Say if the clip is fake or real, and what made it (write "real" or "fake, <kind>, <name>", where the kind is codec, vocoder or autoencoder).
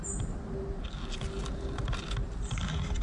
real